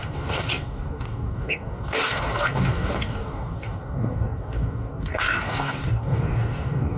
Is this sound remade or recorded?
remade